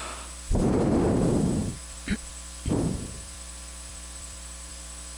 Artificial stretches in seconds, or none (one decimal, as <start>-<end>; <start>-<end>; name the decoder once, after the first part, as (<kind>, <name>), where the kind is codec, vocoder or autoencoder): 1.6-4.7 (vocoder, BigVGAN v2)